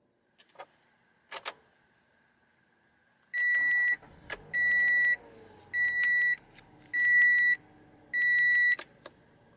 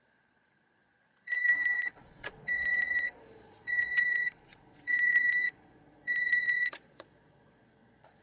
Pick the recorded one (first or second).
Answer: first